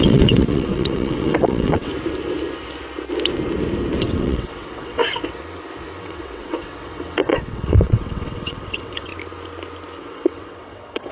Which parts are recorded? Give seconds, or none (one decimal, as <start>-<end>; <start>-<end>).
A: 1.9-4.0; 5.0-6.0; 9.1-10.0